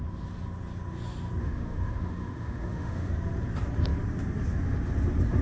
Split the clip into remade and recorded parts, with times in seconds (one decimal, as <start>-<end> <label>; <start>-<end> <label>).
0.0-1.4 recorded; 1.4-3.1 remade; 3.1-5.4 recorded